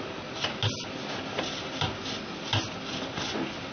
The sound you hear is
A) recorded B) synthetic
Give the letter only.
A